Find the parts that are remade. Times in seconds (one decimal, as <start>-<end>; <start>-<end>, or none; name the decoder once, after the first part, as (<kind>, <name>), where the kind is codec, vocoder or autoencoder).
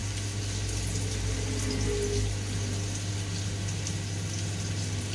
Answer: none